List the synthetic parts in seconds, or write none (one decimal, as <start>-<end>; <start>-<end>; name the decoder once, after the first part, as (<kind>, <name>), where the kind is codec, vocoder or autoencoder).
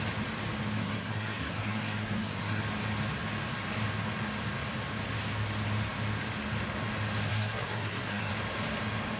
0.8-2.6 (codec, SNAC); 7.3-8.3